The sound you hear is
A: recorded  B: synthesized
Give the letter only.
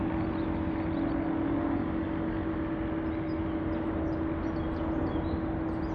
A